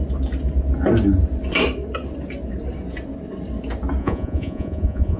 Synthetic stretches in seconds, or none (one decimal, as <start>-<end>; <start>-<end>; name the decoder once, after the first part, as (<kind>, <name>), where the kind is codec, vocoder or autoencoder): 4.0-5.2 (vocoder, Vocos)